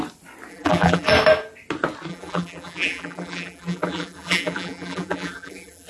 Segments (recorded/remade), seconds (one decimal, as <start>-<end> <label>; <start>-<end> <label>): 0.0-0.5 recorded; 0.5-1.1 remade; 1.1-2.1 recorded; 2.1-5.9 remade